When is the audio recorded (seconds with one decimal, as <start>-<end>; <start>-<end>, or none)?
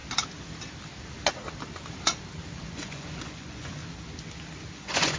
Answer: 0.0-2.7; 3.8-4.7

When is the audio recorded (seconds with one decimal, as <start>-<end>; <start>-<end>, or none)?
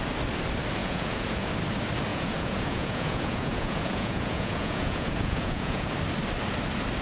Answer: 0.0-0.8; 1.5-2.1; 5.9-7.0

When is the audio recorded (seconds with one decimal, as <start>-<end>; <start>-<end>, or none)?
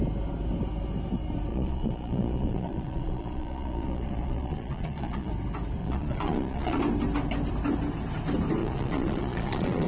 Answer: 0.0-1.5; 5.3-5.8; 6.8-8.6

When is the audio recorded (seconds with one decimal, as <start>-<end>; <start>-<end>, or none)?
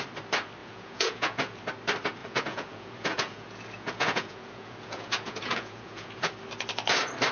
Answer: 0.0-0.6; 1.6-2.2; 6.3-7.3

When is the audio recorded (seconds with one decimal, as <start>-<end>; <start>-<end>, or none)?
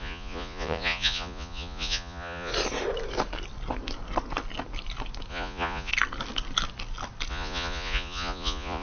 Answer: 2.5-5.3; 5.9-7.3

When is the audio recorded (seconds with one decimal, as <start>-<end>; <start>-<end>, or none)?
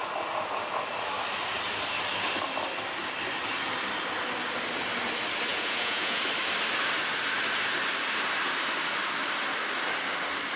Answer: 0.0-5.5; 6.2-10.6